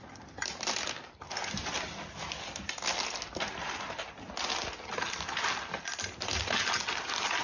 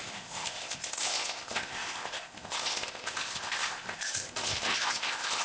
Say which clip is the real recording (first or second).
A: first